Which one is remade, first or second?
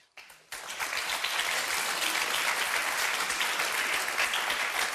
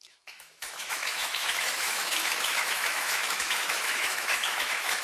second